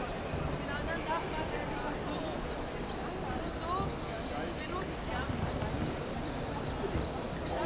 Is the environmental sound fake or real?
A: real